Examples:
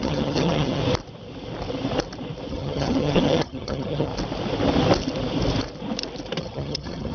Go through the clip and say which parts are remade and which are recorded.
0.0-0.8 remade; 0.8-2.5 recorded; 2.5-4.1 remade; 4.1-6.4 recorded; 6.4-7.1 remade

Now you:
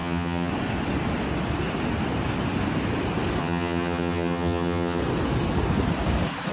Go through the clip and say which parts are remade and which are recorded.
0.0-0.5 remade; 0.5-3.4 recorded; 3.4-5.0 remade; 5.0-6.5 recorded